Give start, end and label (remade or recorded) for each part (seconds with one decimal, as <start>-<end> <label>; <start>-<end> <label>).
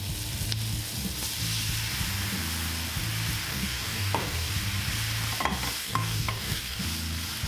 0.0-3.5 recorded; 3.5-4.5 remade; 4.5-5.8 recorded; 5.8-6.8 remade; 6.8-7.5 recorded